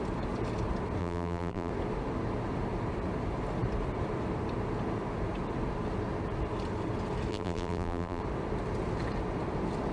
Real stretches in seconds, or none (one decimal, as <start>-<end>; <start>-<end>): 0.0-1.0; 1.7-7.3; 8.2-9.9